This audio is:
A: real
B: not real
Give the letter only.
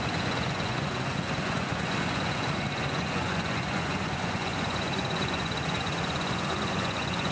B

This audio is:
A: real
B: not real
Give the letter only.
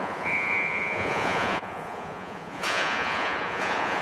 B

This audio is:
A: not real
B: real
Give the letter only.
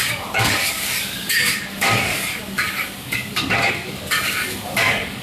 A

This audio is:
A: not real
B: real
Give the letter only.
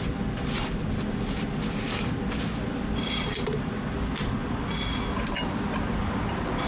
B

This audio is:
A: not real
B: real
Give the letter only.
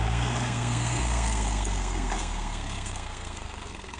A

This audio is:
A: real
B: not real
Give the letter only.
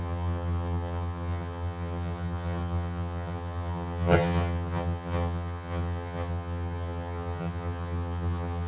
B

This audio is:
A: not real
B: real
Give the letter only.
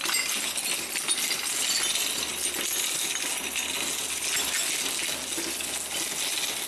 B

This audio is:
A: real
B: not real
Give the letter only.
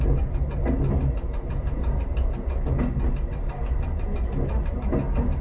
A